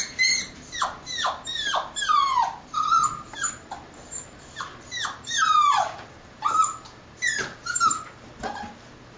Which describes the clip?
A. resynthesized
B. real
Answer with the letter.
B